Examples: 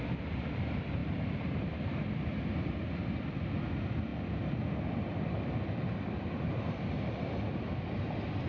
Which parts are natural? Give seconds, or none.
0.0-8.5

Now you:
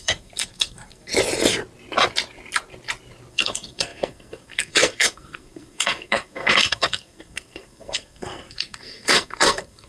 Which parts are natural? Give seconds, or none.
1.1-3.3

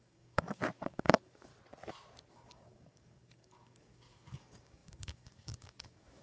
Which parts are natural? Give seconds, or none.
1.5-2.3

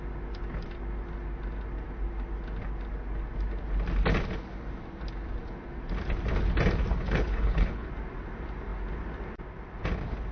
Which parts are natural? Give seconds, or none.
0.0-6.9; 7.9-10.3

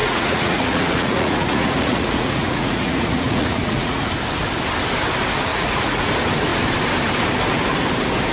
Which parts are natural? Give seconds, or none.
4.1-5.5; 6.1-8.3

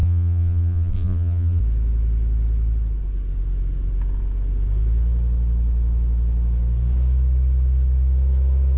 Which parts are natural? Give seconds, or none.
1.6-8.8